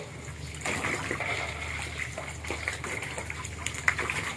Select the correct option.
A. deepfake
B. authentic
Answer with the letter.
B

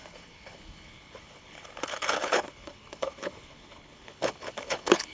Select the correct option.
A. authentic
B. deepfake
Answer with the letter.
B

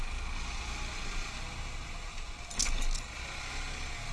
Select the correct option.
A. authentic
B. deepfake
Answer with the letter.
A